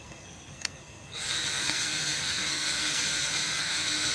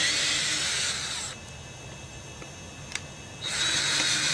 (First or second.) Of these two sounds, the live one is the second